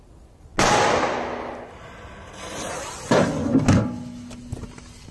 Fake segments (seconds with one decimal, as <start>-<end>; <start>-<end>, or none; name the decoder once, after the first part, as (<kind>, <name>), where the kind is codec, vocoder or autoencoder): none